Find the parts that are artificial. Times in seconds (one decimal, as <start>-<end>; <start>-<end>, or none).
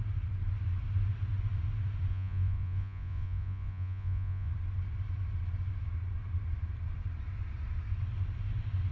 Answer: 2.1-4.5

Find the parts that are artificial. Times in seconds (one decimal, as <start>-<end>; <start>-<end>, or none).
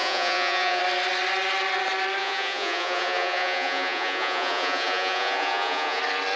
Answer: 0.0-0.8; 2.2-6.0